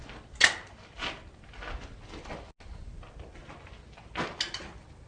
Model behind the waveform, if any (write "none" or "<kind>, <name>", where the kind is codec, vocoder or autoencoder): none